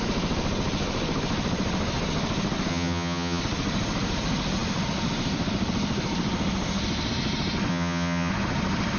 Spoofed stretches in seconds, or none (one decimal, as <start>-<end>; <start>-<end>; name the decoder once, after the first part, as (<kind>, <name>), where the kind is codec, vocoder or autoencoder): 2.7-3.4 (vocoder, HiFi-GAN); 7.7-8.3